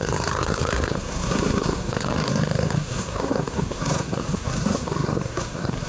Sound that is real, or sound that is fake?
fake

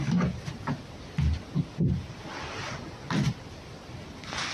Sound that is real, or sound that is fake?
real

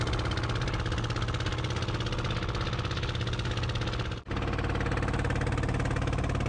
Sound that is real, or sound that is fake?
real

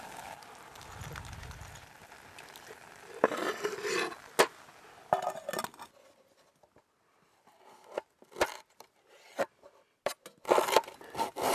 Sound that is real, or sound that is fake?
real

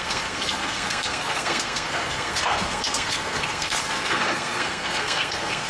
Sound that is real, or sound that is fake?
fake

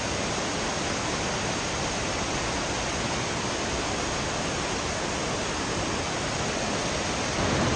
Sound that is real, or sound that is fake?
real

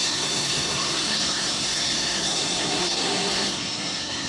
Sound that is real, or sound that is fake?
fake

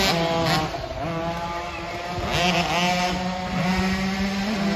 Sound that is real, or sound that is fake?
real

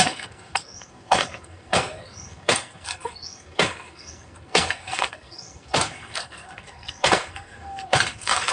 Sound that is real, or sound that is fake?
fake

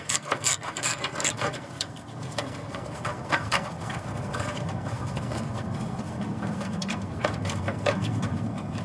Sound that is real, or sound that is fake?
fake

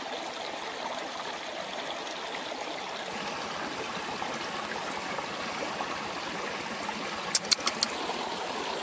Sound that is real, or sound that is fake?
real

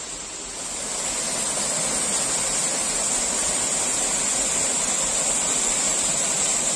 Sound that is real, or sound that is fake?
real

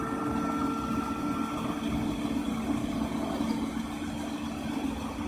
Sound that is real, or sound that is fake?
real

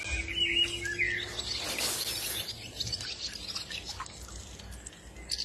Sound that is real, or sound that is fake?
real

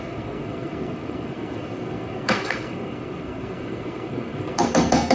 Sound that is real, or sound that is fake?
fake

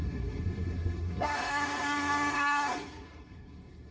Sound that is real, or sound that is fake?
fake